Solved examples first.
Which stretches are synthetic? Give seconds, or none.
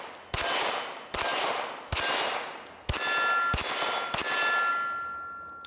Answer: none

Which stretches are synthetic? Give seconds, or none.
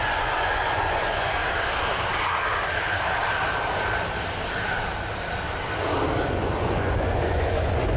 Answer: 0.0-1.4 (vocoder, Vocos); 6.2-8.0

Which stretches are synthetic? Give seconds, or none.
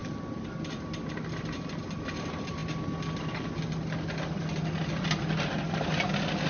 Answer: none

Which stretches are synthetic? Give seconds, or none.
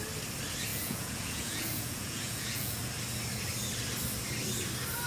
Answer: 0.7-2.9 (vocoder, Vocos)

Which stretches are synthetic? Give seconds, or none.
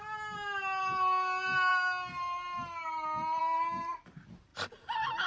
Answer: none